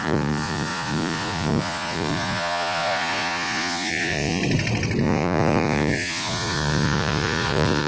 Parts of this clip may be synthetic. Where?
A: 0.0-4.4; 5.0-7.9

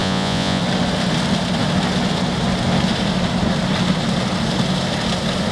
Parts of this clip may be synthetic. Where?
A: 0.0-0.6

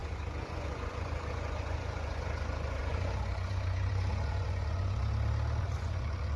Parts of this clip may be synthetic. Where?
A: 0.0-5.0; 5.6-6.4

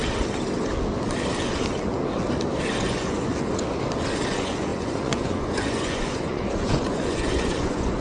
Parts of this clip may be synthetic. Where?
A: 2.7-3.3; 4.3-8.0

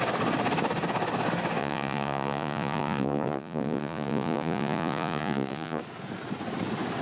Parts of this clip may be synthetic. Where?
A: 1.6-5.8

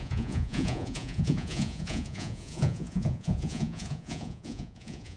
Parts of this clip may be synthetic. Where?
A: 0.0-5.2